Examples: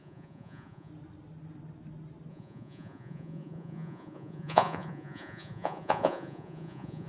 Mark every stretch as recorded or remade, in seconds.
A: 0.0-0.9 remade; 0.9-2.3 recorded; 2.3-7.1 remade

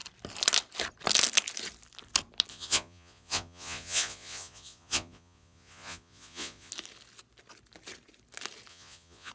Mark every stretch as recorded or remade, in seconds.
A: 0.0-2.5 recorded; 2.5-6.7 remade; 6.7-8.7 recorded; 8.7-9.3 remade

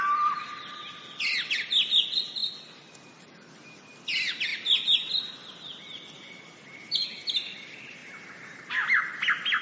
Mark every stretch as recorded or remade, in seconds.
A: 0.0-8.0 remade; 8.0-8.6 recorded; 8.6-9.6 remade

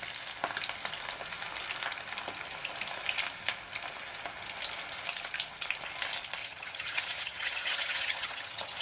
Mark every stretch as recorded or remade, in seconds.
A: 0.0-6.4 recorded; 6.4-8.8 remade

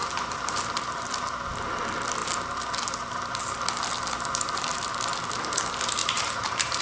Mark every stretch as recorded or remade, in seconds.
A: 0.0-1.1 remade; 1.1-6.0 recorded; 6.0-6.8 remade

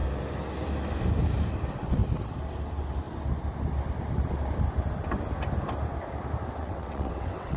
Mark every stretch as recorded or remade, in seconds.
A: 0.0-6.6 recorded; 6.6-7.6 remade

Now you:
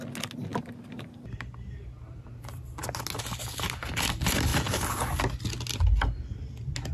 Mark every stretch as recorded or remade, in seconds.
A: 0.0-6.9 recorded

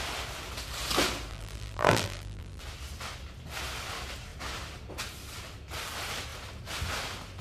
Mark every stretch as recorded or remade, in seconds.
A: 0.0-1.3 recorded; 1.3-2.6 remade; 2.6-7.4 recorded